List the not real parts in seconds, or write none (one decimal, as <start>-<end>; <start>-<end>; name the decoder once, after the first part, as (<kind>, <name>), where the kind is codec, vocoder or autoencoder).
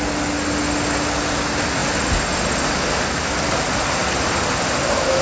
none